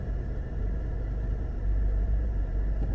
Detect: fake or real fake